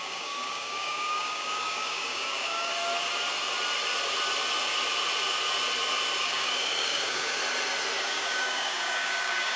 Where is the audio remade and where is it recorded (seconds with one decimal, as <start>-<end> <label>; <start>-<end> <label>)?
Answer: 0.0-2.7 remade; 2.7-6.2 recorded; 6.2-7.4 remade; 7.4-8.0 recorded; 8.0-9.6 remade

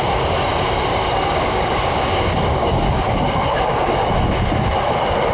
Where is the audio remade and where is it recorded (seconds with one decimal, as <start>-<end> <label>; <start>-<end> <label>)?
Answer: 0.0-0.9 recorded; 0.9-4.1 remade; 4.1-5.3 recorded